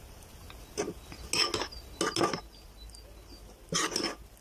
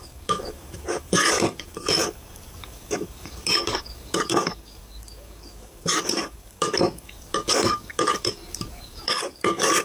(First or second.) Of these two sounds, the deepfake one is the second